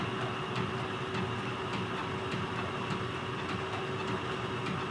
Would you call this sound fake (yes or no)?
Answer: no